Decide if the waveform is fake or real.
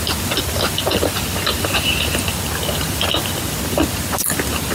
real